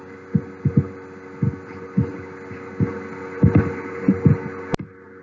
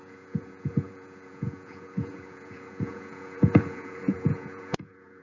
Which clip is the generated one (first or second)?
second